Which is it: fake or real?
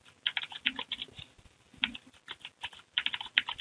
real